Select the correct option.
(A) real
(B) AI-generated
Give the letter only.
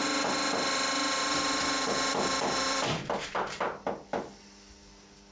B